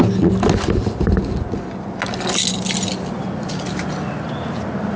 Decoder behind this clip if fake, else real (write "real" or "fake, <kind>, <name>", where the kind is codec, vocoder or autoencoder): real